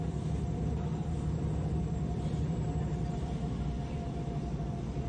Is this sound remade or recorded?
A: remade